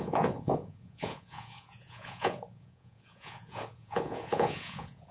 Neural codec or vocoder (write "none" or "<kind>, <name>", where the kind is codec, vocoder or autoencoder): vocoder, Vocos